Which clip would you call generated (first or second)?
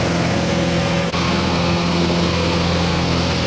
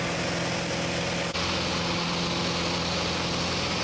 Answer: first